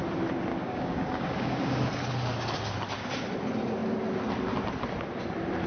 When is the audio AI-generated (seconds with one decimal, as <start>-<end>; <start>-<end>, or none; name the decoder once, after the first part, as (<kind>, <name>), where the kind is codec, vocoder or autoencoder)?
0.5-1.9 (codec, DAC)